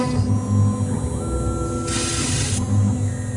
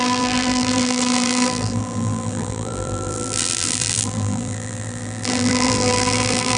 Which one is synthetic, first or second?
second